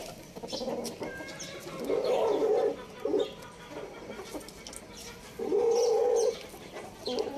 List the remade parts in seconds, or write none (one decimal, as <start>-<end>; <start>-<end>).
none